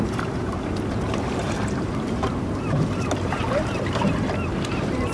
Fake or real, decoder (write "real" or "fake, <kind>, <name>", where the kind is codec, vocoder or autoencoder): fake, vocoder, BigVGAN v2